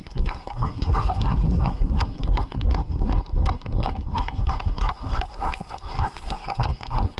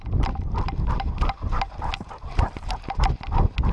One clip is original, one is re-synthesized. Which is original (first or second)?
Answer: second